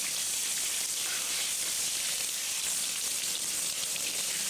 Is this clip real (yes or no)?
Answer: no